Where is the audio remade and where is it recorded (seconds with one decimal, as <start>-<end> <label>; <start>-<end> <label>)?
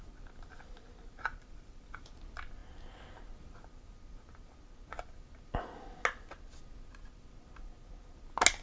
0.0-8.6 recorded